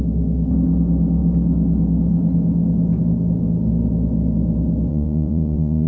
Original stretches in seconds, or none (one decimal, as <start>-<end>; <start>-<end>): 0.0-4.9